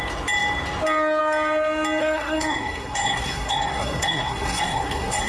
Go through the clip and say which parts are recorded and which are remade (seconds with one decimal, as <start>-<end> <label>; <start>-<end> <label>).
0.0-2.0 recorded; 2.0-5.3 remade